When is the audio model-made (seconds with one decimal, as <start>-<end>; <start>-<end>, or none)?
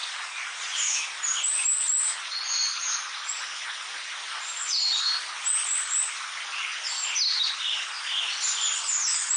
0.0-1.0